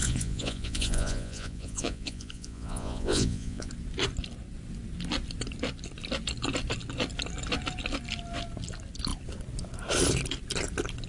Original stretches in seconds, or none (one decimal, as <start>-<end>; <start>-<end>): 3.7-11.1